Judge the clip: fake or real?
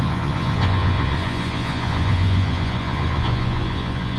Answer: fake